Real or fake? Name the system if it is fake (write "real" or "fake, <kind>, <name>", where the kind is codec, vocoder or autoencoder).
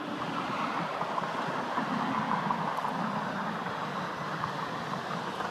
real